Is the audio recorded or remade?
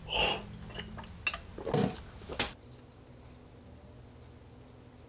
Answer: recorded